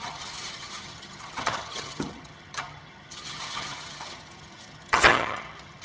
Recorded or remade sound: remade